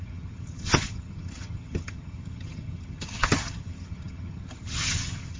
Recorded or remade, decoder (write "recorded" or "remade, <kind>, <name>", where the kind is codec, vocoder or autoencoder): remade, vocoder, HiFi-GAN